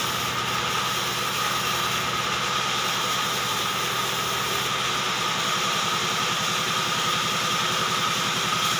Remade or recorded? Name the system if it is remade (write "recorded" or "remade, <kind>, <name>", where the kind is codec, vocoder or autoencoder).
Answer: recorded